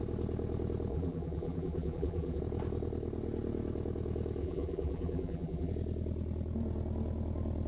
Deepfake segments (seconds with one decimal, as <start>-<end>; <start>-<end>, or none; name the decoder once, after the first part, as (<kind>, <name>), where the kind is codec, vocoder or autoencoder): 0.9-2.4 (vocoder, BigVGAN v2); 4.4-5.7